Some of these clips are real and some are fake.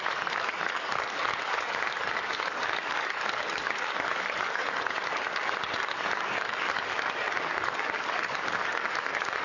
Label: fake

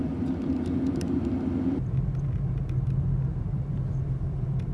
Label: real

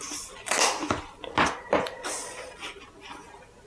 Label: real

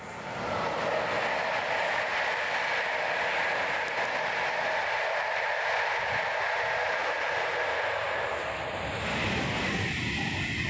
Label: real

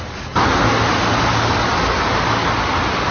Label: real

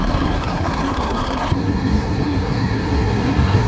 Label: fake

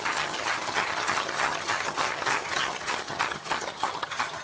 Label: fake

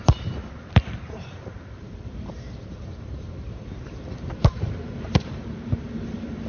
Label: fake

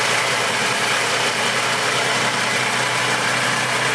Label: real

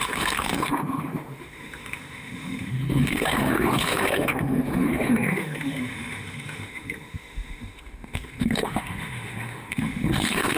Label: fake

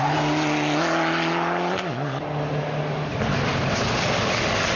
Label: real